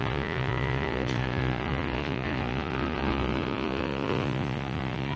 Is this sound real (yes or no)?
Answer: no